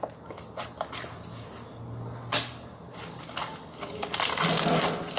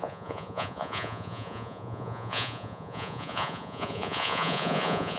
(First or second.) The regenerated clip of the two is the second